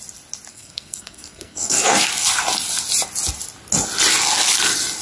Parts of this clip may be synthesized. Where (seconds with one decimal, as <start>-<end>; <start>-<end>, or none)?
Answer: 0.5-2.1